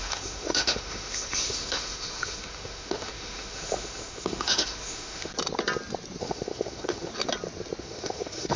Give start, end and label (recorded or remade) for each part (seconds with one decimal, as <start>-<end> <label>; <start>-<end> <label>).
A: 0.0-5.3 remade; 5.3-6.2 recorded; 6.2-7.1 remade; 7.1-7.8 recorded; 7.8-8.6 remade